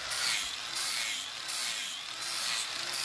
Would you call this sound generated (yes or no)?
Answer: no